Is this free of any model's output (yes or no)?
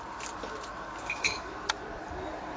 yes